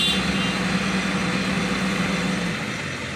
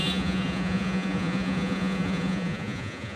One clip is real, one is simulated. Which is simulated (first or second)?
second